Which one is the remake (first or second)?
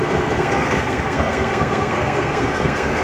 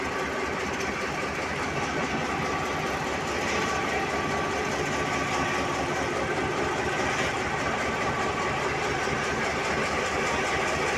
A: first